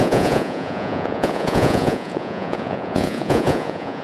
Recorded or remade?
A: remade